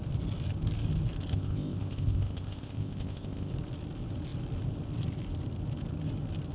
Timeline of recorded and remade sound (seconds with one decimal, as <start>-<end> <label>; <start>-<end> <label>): 0.0-1.3 recorded; 1.3-3.5 remade; 3.5-6.5 recorded